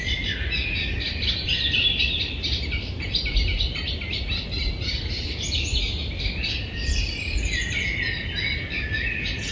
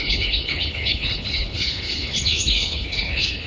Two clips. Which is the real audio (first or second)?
first